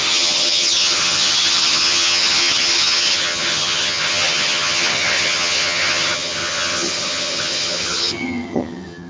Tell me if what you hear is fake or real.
fake